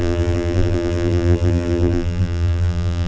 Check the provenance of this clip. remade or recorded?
remade